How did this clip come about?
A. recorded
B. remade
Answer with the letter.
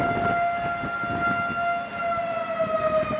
A